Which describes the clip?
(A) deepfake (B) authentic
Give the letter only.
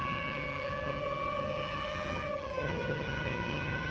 A